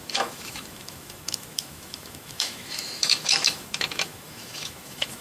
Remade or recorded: remade